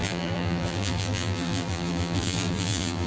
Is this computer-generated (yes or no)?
yes